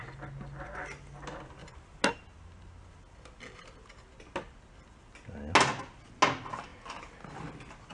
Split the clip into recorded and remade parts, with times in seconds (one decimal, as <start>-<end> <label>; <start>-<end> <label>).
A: 0.0-7.9 recorded